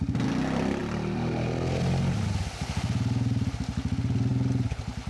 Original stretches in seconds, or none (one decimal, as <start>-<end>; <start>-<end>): 0.0-5.1